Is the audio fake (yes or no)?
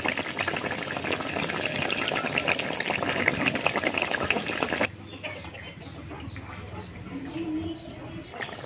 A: no